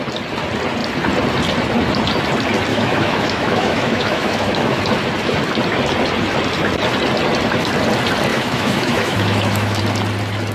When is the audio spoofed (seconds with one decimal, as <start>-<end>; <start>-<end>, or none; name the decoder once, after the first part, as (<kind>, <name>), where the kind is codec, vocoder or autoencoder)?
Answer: 2.7-4.8 (autoencoder, DAC-VAE); 8.3-9.8